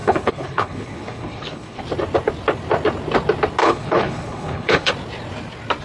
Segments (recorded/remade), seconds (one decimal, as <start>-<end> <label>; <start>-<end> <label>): 0.0-1.8 remade; 1.8-3.6 recorded; 3.6-4.9 remade; 4.9-5.8 recorded